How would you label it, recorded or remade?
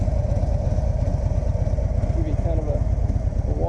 recorded